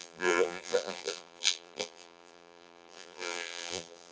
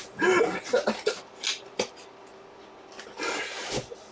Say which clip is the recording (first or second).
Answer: second